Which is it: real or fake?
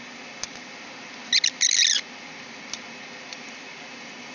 real